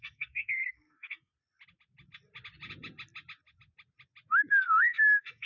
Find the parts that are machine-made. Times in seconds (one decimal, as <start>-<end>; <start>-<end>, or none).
0.0-1.3; 4.6-5.5